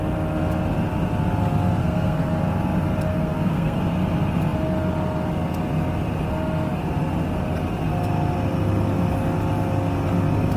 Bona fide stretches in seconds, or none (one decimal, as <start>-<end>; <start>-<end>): 0.0-1.8; 2.3-3.1; 3.8-10.6